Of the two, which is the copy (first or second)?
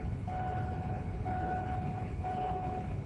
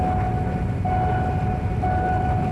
first